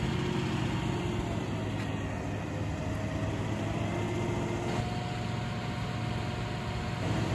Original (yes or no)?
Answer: yes